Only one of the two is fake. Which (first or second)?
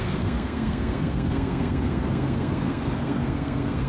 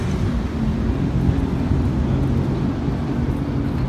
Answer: first